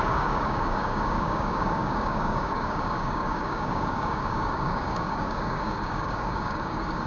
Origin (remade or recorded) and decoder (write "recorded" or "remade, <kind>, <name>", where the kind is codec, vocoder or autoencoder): remade, codec, DAC